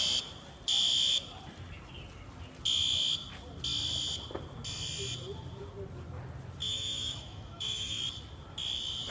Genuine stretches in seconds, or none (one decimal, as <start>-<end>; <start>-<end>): 0.0-6.6; 8.0-9.1